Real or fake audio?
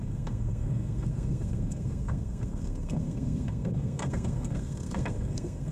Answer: fake